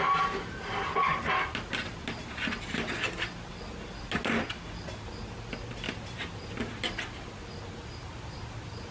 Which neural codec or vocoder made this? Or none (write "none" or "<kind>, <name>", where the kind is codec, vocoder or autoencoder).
none